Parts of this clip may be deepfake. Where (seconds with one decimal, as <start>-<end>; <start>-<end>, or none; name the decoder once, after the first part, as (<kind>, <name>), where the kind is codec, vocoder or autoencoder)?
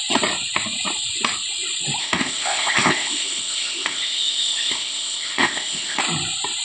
2.0-6.0 (codec, ZipCodec)